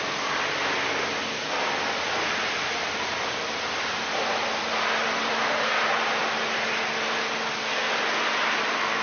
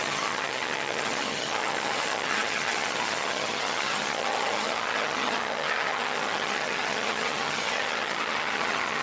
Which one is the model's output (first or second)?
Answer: second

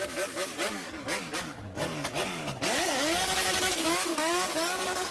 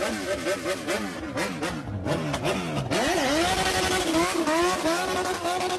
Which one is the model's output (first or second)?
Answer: first